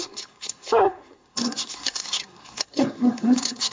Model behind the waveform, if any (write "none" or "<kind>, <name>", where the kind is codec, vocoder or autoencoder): codec, SNAC